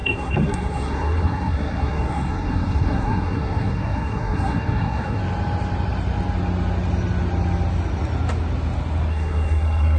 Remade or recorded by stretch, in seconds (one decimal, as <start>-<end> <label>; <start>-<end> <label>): 0.0-5.2 remade; 5.2-9.1 recorded; 9.1-10.0 remade